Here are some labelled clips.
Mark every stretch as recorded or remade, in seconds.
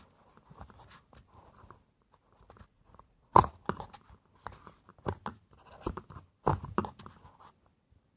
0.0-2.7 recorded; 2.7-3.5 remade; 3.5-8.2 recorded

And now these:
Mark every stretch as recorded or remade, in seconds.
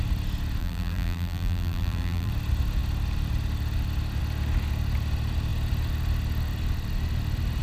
0.0-0.6 recorded; 0.6-2.3 remade; 2.3-7.6 recorded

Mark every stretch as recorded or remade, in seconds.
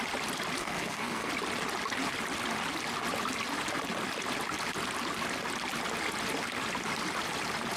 0.0-0.6 recorded; 0.6-1.3 remade; 1.3-7.8 recorded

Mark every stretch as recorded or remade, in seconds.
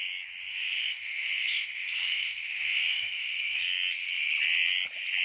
0.0-0.5 recorded; 0.5-3.6 remade; 3.6-5.2 recorded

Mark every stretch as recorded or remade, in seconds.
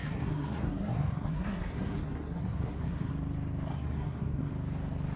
0.0-3.1 remade; 3.1-3.7 recorded; 3.7-4.5 remade; 4.5-5.2 recorded